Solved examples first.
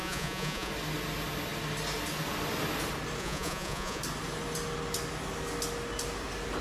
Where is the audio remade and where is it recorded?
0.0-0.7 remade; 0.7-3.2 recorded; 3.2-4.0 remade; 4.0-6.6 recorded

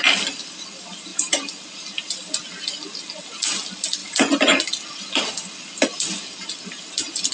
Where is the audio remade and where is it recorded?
0.0-7.3 recorded

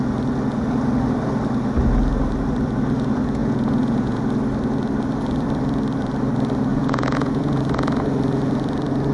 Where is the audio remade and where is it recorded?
0.0-3.4 recorded; 3.4-4.2 remade; 4.2-6.7 recorded; 6.7-7.6 remade; 7.6-9.1 recorded

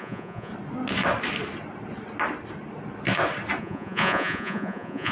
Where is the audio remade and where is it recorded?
0.0-0.5 remade; 0.5-3.6 recorded; 3.6-5.1 remade

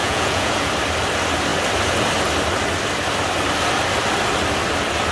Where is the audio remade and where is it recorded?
0.0-0.7 remade; 0.7-5.1 recorded

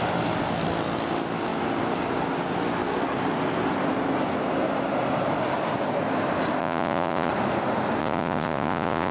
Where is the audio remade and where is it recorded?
0.0-6.6 recorded; 6.6-7.3 remade; 7.3-8.0 recorded; 8.0-9.1 remade